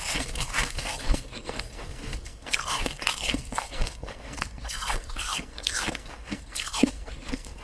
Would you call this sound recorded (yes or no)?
no